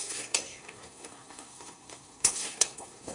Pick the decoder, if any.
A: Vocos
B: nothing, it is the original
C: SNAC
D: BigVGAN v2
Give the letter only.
C